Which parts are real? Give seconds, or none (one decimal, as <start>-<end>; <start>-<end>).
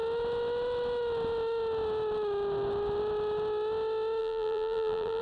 0.0-4.2